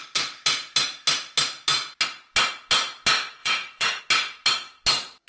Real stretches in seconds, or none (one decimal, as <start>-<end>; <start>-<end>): 0.0-3.4; 4.0-5.3